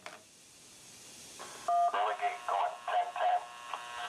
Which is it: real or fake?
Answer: real